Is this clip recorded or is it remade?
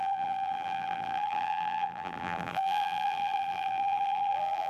remade